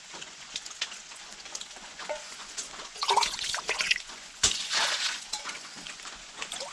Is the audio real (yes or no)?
no